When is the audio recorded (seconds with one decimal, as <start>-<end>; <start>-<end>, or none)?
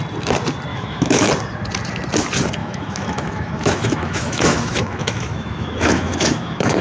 0.0-0.7; 1.3-2.6